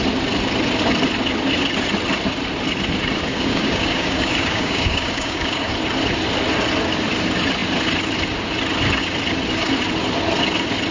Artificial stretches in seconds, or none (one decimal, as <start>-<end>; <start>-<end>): 3.3-5.7